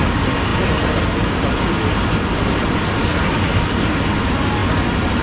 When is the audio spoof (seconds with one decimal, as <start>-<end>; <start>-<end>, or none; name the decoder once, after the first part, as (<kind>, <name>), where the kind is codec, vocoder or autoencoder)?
4.6-5.2 (vocoder, BigVGAN v2)